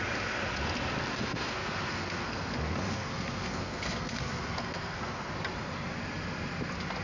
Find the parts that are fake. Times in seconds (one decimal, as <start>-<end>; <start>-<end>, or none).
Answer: 1.1-5.3